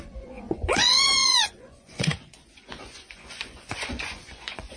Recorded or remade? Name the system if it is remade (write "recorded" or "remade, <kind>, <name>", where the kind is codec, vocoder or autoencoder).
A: remade, vocoder, Vocos